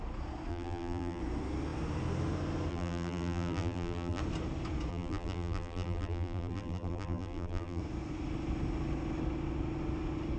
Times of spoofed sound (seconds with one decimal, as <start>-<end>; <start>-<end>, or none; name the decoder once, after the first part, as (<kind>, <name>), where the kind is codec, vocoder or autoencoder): 0.5-1.2 (vocoder, BigVGAN v2); 2.7-4.2; 4.9-7.8